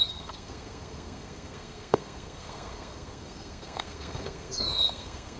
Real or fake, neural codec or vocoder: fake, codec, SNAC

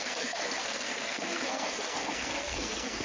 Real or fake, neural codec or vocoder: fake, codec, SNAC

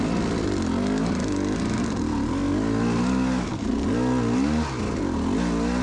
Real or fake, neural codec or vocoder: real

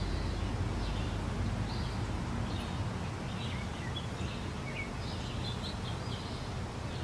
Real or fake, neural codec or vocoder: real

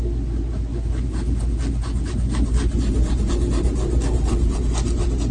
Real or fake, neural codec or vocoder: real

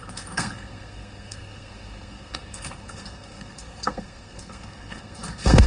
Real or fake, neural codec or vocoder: fake, codec, SNAC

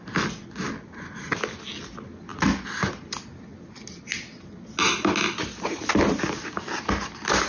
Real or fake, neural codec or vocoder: real